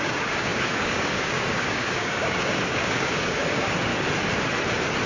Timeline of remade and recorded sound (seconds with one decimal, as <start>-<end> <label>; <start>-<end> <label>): 0.0-3.9 remade; 3.9-5.1 recorded